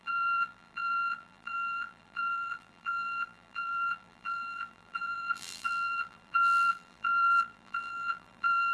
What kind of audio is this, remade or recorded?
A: remade